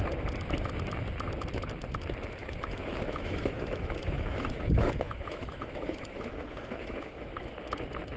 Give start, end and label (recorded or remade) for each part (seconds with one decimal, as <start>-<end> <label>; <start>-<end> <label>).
0.0-2.4 recorded; 2.4-7.3 remade; 7.3-8.2 recorded